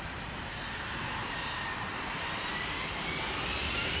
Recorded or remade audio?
recorded